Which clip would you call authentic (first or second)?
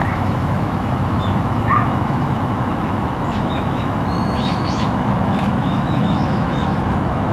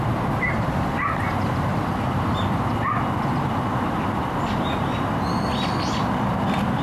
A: second